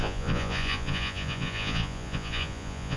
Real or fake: fake